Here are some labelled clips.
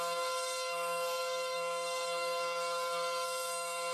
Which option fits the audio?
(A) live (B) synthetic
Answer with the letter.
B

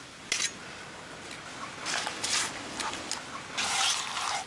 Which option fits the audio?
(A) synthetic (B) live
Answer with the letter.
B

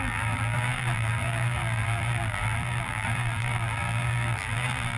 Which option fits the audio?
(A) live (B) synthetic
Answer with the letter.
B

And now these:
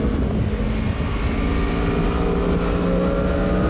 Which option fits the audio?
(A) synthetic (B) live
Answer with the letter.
B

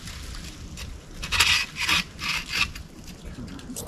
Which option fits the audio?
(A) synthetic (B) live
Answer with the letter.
B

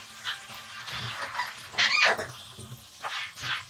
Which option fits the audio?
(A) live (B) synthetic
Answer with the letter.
A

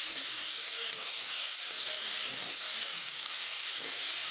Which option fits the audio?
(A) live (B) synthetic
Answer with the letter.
B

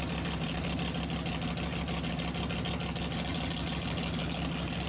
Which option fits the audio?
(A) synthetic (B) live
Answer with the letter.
B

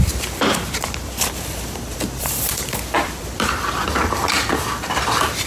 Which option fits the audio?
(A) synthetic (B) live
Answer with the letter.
A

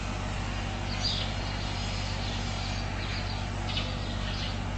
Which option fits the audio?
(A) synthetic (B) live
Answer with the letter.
B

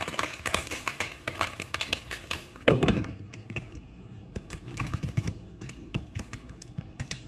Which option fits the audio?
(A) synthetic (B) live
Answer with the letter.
A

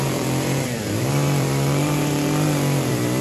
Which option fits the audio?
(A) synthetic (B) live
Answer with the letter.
A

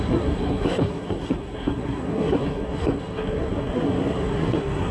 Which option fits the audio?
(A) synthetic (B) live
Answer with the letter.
A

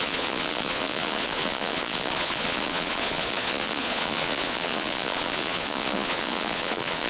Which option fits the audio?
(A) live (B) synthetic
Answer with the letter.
B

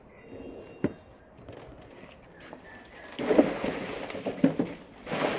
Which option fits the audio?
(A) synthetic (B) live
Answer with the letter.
B